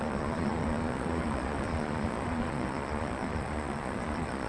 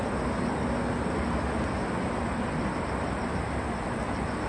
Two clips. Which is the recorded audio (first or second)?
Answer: second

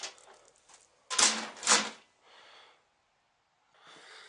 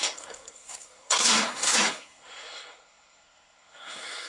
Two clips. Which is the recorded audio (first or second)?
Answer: first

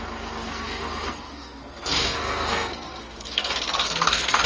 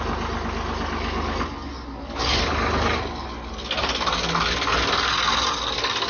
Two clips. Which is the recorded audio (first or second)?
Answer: second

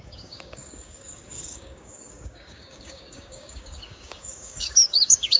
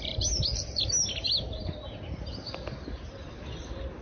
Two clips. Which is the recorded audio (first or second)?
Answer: second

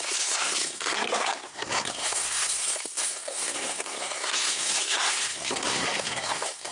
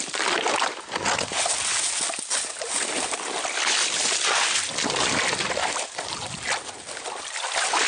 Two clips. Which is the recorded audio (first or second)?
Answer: second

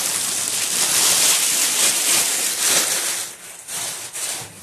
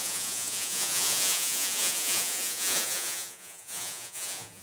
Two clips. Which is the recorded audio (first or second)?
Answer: first